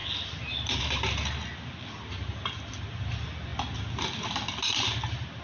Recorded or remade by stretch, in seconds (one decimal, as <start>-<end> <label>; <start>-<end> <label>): 0.0-5.4 recorded